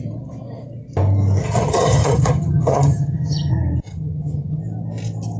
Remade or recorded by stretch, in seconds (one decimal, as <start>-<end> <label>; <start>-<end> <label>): 0.0-1.4 recorded; 1.4-3.5 remade; 3.5-3.9 recorded; 3.9-4.6 remade; 4.6-5.4 recorded